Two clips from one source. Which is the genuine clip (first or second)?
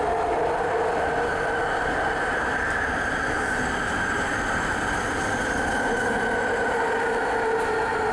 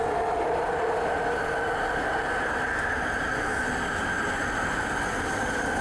second